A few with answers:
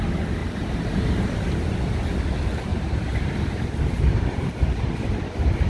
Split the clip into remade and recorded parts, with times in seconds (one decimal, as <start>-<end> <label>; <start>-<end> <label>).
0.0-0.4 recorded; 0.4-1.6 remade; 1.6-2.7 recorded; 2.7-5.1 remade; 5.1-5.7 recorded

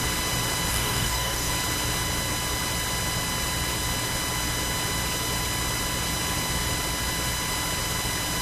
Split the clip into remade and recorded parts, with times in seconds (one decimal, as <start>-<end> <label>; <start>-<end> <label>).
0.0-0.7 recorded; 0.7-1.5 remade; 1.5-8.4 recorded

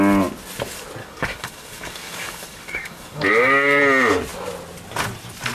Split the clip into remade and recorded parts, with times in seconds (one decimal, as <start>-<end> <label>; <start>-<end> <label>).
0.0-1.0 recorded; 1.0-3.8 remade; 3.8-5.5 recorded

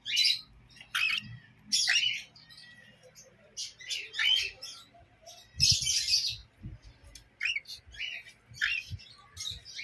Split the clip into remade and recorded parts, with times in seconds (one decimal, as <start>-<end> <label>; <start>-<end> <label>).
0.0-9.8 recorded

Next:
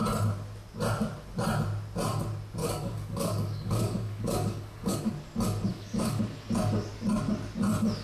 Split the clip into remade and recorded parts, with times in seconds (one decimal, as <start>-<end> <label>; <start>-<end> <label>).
0.0-2.6 recorded; 2.6-5.1 remade; 5.1-5.7 recorded; 5.7-6.2 remade; 6.2-8.0 recorded

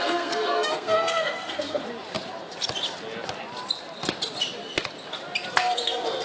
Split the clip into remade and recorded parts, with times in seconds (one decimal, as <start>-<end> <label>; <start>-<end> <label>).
0.0-1.8 remade; 1.8-5.5 recorded; 5.5-6.2 remade